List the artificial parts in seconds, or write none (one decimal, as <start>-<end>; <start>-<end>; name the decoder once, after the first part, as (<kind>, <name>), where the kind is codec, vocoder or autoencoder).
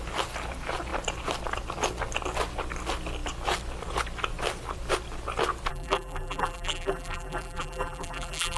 5.7-8.6 (vocoder, BigVGAN v2)